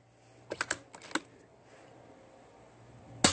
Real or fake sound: real